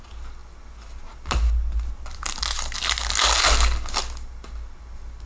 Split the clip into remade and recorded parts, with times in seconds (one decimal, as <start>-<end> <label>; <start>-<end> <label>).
0.0-5.3 recorded